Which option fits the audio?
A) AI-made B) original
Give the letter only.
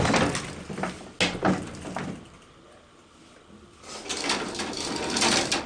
B